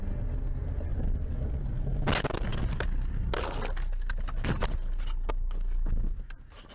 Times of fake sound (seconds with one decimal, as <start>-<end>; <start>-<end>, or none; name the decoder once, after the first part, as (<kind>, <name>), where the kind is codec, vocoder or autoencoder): none